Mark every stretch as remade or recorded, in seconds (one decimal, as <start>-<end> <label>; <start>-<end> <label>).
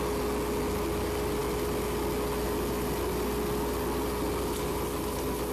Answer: 0.0-5.5 recorded